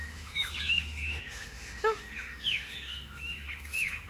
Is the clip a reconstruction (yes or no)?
yes